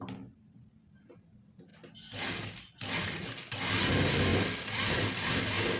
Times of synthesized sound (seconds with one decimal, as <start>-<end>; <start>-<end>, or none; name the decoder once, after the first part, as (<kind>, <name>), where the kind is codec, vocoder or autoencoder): none